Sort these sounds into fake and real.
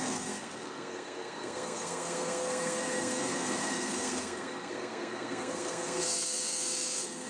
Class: fake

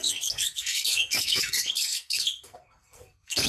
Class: fake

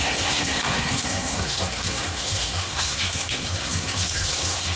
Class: fake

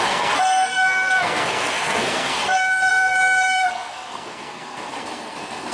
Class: fake